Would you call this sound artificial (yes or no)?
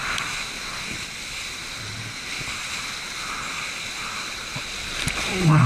no